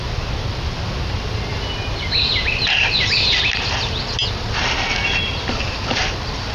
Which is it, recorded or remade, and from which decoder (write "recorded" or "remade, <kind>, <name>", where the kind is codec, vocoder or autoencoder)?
recorded